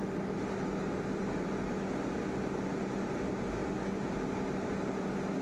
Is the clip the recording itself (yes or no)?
yes